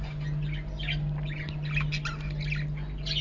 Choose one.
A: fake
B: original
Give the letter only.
B